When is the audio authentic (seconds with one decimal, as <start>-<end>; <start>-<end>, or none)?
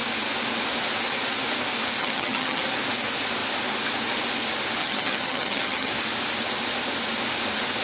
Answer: 0.0-2.0; 2.6-4.8; 5.9-7.8